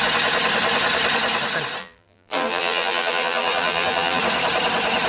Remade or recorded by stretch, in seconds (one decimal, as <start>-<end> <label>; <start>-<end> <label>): 0.0-1.8 recorded; 1.8-4.2 remade; 4.2-5.1 recorded